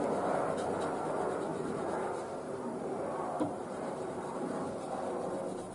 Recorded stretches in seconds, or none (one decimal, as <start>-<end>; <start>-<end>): 0.0-1.5; 4.9-5.7